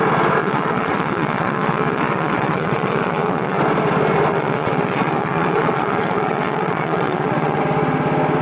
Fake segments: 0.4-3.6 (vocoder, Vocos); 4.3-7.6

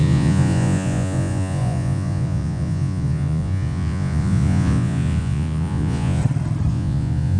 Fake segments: 0.0-6.2 (vocoder, Vocos); 6.7-7.4

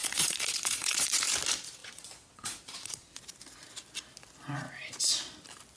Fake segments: 0.0-1.2 (vocoder, Vocos); 1.8-3.2

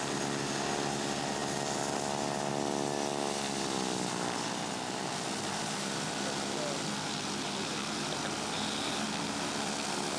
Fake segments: none